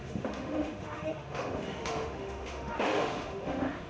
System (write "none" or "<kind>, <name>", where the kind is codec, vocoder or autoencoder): autoencoder, DAC-VAE